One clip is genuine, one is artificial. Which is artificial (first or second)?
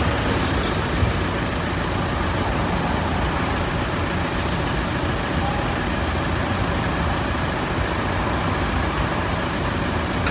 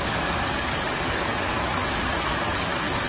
second